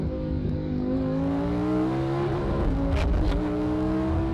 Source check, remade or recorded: remade